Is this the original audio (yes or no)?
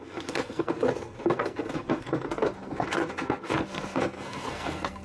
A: no